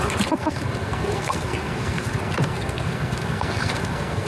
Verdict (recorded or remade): remade